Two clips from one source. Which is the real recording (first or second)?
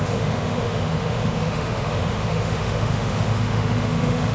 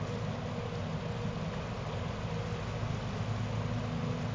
second